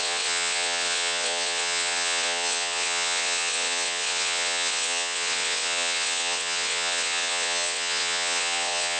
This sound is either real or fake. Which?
fake